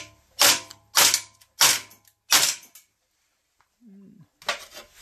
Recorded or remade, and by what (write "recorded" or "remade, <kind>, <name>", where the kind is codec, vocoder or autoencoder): recorded